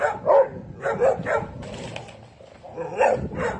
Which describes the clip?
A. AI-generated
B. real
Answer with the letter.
B